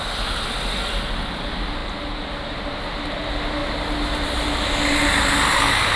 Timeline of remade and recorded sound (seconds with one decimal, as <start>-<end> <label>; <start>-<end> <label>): 0.0-6.0 recorded